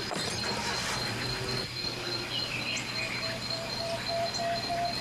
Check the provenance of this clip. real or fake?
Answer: real